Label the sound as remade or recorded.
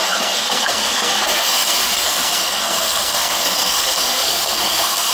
remade